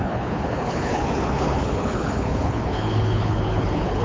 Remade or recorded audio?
remade